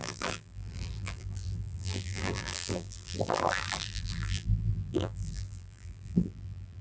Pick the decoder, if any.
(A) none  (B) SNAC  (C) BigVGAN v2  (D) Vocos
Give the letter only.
C